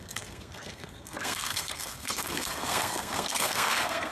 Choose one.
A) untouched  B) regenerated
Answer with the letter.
B